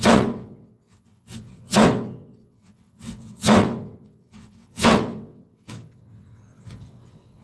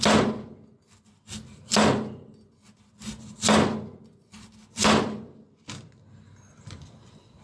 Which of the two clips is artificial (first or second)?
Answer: first